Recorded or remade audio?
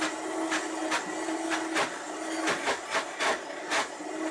recorded